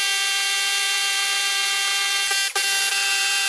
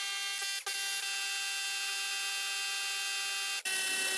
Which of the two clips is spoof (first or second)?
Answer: first